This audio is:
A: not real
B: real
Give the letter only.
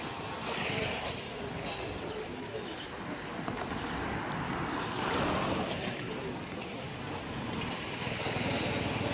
B